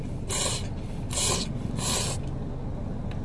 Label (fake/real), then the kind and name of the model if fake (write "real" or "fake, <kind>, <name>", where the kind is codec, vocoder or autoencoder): real